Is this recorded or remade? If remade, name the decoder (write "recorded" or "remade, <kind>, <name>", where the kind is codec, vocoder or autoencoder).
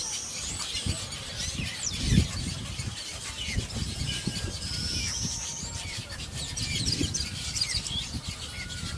remade, vocoder, BigVGAN v2